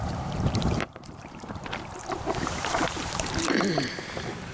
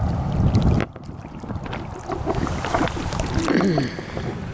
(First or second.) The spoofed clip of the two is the first